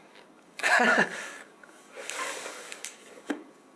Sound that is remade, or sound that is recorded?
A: remade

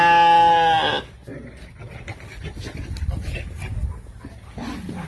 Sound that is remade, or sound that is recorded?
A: recorded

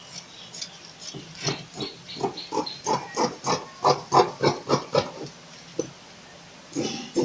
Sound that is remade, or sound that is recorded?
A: recorded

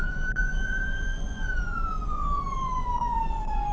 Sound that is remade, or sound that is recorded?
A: remade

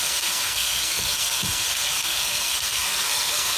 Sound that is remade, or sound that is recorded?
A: remade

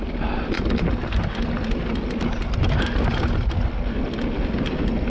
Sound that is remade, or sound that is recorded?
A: recorded